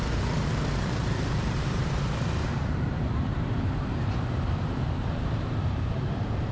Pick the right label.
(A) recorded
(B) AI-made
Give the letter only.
B